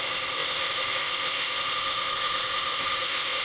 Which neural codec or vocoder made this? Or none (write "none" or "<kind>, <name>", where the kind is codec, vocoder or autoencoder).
codec, ZipCodec